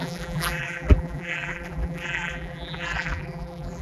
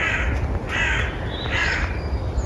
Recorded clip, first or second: second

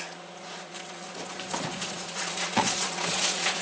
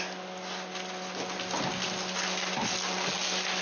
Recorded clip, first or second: second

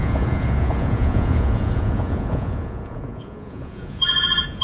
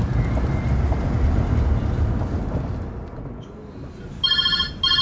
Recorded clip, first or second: second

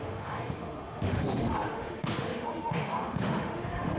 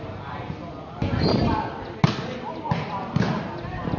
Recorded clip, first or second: second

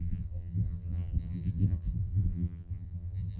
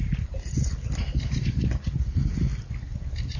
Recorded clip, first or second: second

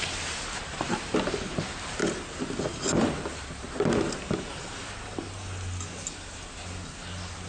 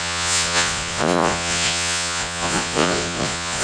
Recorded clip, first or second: first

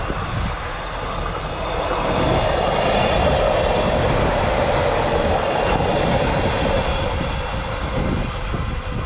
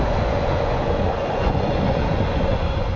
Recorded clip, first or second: first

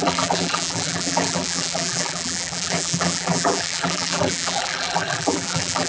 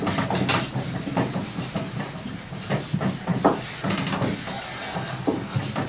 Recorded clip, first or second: second